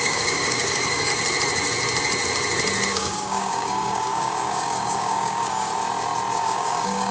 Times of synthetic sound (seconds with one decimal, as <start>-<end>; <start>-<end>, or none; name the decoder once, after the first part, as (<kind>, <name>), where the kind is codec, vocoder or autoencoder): 0.0-1.1 (codec, DAC); 2.9-5.7; 6.4-7.1